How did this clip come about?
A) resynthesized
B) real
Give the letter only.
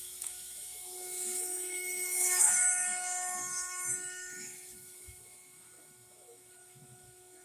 A